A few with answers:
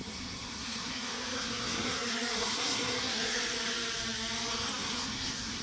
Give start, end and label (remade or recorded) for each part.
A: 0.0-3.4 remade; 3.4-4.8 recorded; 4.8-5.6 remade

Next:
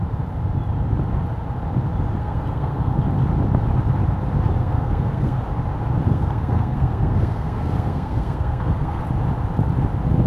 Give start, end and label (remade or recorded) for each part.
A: 0.0-2.2 recorded; 2.2-3.0 remade; 3.0-4.6 recorded; 4.6-5.4 remade; 5.4-6.1 recorded; 6.1-9.0 remade; 9.0-10.3 recorded